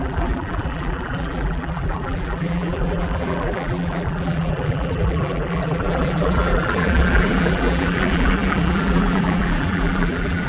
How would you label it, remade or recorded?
remade